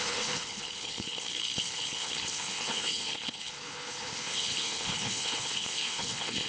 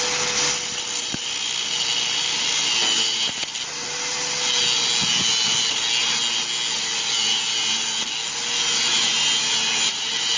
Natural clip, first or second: second